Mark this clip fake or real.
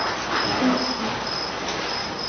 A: real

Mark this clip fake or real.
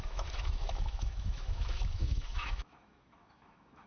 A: fake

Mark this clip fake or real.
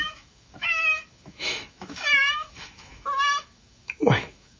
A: fake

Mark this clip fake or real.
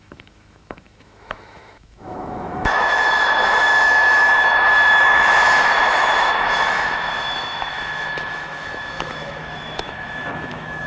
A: fake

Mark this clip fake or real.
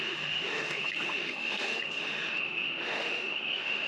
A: fake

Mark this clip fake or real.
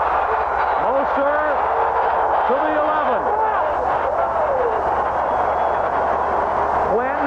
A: real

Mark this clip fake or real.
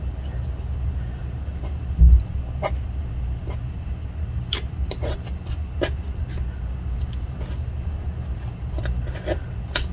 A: real